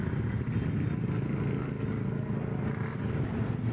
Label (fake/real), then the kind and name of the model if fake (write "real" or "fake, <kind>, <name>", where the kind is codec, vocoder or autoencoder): real